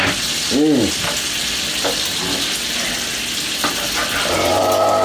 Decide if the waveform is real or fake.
real